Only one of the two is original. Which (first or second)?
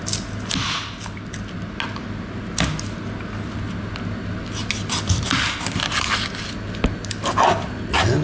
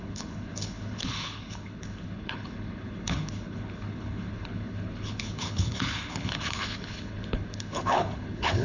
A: first